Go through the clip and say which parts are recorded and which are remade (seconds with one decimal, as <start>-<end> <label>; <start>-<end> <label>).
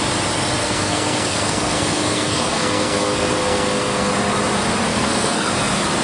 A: 0.0-0.6 recorded; 0.6-4.1 remade; 4.1-4.9 recorded; 4.9-5.5 remade; 5.5-6.0 recorded